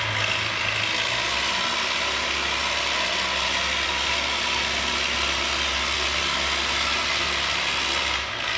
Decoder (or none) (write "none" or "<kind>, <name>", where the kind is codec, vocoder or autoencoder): none